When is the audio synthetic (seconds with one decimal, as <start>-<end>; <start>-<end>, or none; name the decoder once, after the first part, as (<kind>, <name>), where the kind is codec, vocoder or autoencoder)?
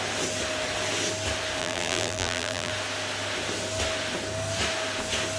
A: 1.6-2.7 (vocoder, BigVGAN v2)